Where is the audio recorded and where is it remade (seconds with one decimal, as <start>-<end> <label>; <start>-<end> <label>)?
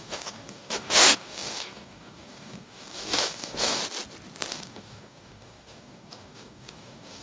0.0-3.8 remade; 3.8-4.5 recorded; 4.5-7.2 remade